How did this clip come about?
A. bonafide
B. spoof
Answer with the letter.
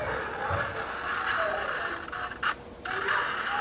A